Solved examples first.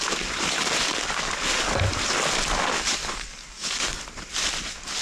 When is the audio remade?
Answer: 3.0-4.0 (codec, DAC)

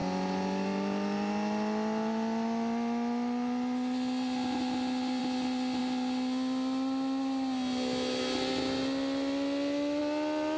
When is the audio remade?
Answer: none

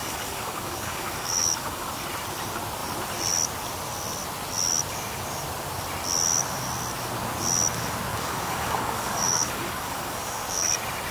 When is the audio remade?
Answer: 0.0-1.9 (codec, DAC); 8.1-10.7

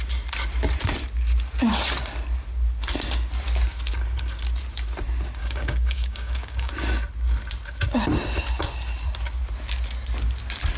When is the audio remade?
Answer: 5.4-6.7 (codec, DAC)